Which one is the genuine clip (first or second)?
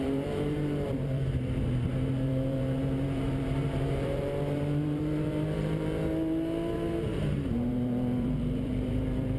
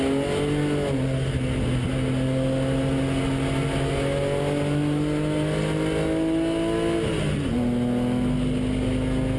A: second